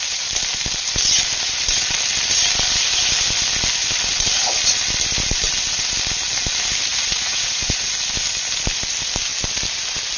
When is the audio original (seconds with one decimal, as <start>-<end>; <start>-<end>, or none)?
0.0-6.9; 7.9-10.2